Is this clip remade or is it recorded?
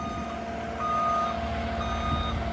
recorded